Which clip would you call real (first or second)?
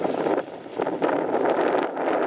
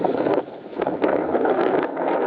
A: first